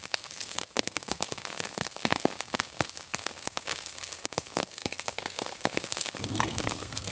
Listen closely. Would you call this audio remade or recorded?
remade